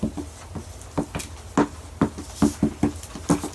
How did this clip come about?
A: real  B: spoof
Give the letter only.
A